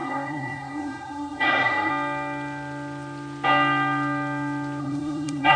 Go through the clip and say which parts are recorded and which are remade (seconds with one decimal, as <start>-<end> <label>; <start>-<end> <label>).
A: 0.0-1.9 remade; 1.9-4.8 recorded; 4.8-5.6 remade

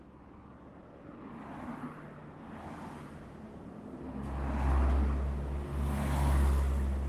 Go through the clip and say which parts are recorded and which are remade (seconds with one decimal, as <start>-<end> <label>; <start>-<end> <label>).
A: 0.0-7.1 recorded

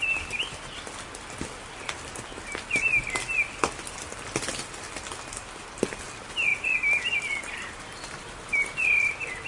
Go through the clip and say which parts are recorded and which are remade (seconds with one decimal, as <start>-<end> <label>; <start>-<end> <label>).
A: 0.0-9.5 recorded

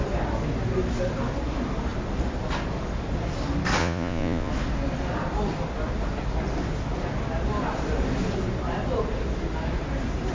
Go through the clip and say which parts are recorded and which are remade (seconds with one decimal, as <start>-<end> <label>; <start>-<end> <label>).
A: 0.0-3.8 recorded; 3.8-4.5 remade; 4.5-10.3 recorded